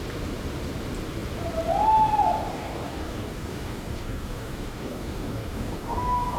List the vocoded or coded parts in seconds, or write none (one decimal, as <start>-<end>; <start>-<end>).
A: 2.5-6.4